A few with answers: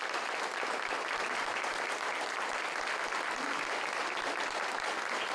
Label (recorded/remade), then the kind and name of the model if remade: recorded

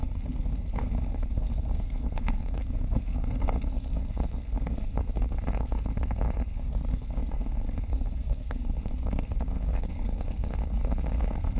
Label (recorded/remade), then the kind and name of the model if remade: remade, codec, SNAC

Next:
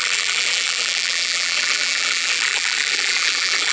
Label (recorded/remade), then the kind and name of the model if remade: remade, vocoder, BigVGAN v2